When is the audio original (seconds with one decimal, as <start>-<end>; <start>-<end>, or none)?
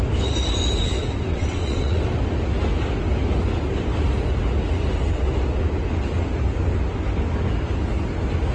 0.0-1.3; 2.0-8.5